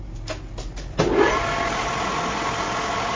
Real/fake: real